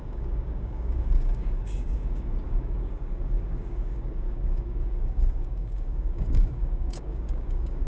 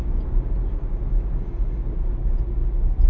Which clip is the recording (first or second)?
second